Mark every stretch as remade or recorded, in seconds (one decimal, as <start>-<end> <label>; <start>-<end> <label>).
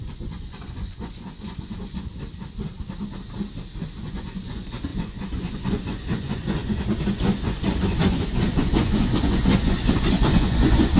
0.0-2.1 remade; 2.1-4.0 recorded; 4.0-11.0 remade